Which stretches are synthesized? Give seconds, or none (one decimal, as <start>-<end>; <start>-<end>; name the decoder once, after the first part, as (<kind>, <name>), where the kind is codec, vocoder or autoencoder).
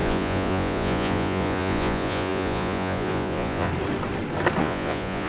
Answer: 0.0-3.7 (vocoder, Vocos); 4.6-5.3